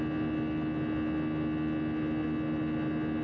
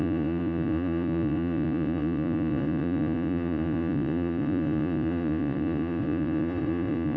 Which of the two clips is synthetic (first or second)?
second